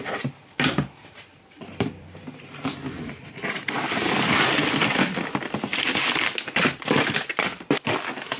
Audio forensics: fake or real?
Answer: fake